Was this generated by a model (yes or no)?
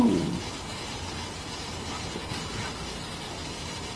no